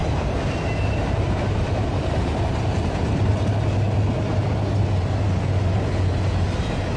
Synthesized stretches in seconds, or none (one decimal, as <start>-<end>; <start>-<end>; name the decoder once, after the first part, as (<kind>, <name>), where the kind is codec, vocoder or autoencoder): 0.0-3.3 (vocoder, BigVGAN v2)